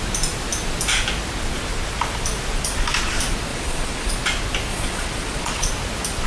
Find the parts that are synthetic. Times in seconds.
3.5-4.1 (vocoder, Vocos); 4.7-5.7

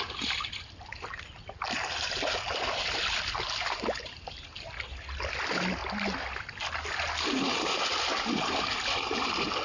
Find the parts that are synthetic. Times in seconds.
none

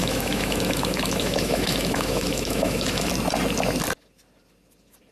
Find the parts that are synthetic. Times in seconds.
0.0-3.1 (autoencoder, DAC-VAE)

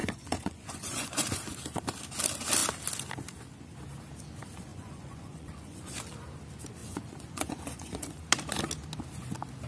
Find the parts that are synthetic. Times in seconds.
0.0-1.4 (vocoder, Vocos); 4.7-5.9; 6.8-8.2

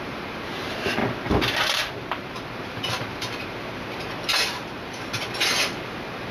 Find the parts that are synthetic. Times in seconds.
0.0-1.0 (vocoder, BigVGAN v2); 1.6-6.3

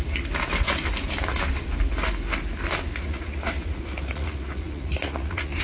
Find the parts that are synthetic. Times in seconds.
2.9-5.6 (vocoder, Vocos)